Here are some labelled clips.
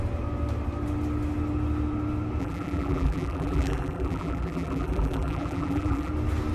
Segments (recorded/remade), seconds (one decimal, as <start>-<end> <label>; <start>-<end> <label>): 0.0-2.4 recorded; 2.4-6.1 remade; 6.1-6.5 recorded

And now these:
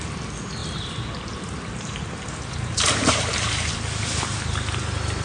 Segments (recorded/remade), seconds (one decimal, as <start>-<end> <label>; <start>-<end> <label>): 0.0-0.6 recorded; 0.6-3.7 remade; 3.7-5.2 recorded

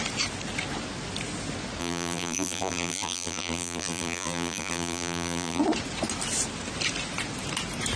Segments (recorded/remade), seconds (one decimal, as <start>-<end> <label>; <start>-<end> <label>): 0.0-1.8 recorded; 1.8-5.6 remade; 5.6-8.0 recorded

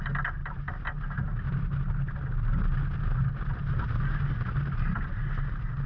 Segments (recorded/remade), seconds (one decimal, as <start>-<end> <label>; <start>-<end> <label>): 0.0-5.9 recorded

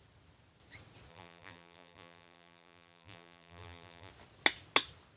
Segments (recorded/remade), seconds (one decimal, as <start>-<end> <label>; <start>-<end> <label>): 0.0-1.1 recorded; 1.1-4.1 remade; 4.1-5.2 recorded

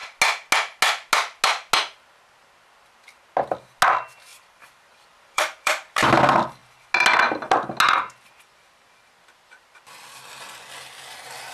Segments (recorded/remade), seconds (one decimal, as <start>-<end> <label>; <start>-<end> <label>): 0.0-4.3 recorded; 4.3-6.1 remade; 6.1-11.5 recorded

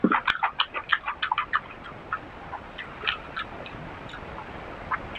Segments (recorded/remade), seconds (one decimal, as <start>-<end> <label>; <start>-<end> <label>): 0.0-5.2 recorded

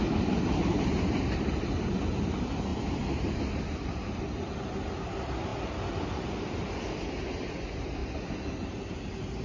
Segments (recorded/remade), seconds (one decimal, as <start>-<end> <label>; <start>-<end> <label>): 0.0-0.7 recorded; 0.7-1.9 remade; 1.9-2.7 recorded; 2.7-3.4 remade; 3.4-9.4 recorded